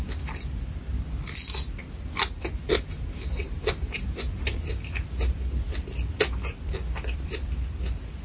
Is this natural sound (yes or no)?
yes